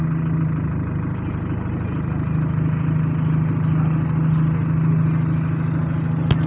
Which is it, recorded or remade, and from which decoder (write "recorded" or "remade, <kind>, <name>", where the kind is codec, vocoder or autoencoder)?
recorded